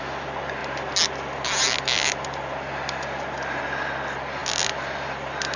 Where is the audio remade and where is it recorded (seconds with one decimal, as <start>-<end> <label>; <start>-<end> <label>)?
0.0-5.6 recorded

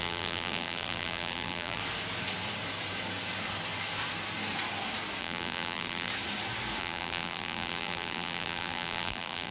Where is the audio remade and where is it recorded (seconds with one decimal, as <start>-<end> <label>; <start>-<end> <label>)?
0.0-1.8 remade; 1.8-5.2 recorded; 5.2-6.1 remade; 6.1-6.8 recorded; 6.8-9.5 remade

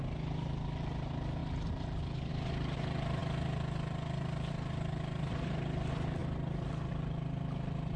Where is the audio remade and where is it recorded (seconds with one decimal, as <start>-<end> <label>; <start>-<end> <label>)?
0.0-8.0 recorded

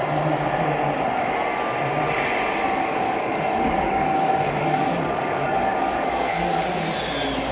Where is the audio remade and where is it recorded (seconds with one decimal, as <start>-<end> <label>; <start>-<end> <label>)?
0.0-2.8 recorded; 2.8-6.6 remade; 6.6-7.5 recorded

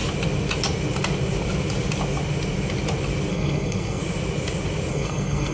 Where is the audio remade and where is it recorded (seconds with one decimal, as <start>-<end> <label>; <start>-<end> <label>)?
0.0-3.3 recorded; 3.3-4.0 remade; 4.0-4.9 recorded; 4.9-5.5 remade

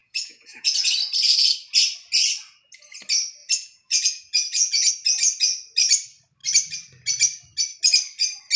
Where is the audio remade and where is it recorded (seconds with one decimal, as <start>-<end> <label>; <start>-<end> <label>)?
0.0-0.9 remade; 0.9-3.4 recorded; 3.4-4.9 remade; 4.9-8.6 recorded

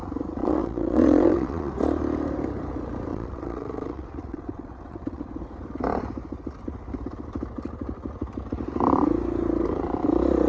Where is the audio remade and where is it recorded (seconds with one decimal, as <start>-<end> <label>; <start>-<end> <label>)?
0.0-0.4 recorded; 0.4-1.7 remade; 1.7-3.1 recorded; 3.1-5.2 remade; 5.2-10.5 recorded